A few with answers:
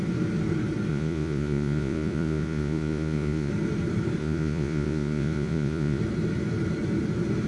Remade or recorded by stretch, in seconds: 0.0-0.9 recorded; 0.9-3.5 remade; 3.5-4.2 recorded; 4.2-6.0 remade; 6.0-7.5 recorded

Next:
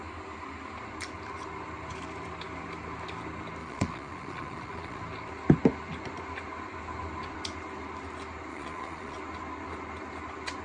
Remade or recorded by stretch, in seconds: 0.0-3.6 recorded; 3.6-5.0 remade; 5.0-8.5 recorded; 8.5-9.2 remade; 9.2-10.6 recorded

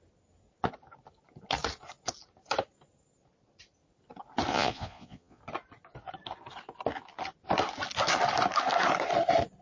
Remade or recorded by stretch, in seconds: 0.0-4.5 recorded; 4.5-5.4 remade; 5.4-9.6 recorded